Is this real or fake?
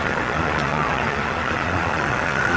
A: fake